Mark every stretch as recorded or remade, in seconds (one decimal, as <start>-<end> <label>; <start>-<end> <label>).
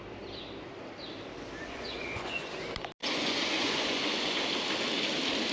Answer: 0.0-1.6 recorded; 1.6-2.6 remade; 2.6-3.0 recorded; 3.0-4.4 remade; 4.4-5.5 recorded